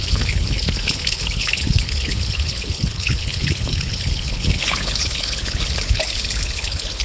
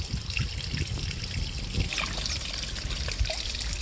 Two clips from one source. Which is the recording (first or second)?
second